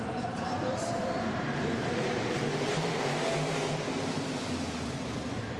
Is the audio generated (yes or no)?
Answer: yes